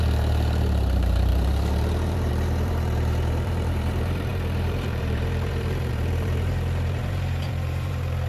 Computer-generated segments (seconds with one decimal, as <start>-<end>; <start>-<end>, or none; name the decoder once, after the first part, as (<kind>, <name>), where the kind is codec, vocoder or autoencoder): 0.0-8.3 (vocoder, BigVGAN v2)